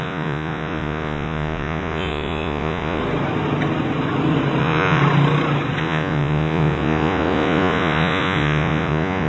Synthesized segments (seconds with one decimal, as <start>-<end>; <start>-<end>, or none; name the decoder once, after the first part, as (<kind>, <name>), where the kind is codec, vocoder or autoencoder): 0.0-3.0 (vocoder, Vocos); 4.6-5.0; 5.8-9.3